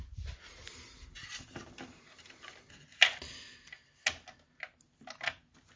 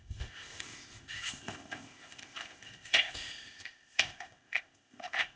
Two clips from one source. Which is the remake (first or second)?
second